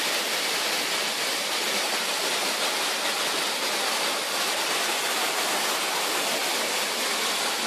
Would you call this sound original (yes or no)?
yes